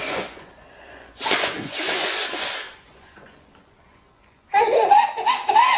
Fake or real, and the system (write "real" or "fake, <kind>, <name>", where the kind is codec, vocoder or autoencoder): fake, vocoder, Vocos